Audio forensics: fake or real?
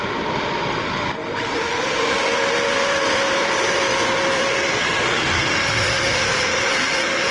real